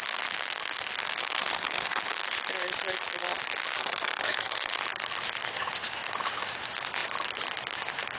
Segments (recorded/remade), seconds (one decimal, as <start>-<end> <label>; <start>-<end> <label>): 0.0-1.2 recorded; 1.2-2.0 remade; 2.0-3.8 recorded; 3.8-4.8 remade; 4.8-8.2 recorded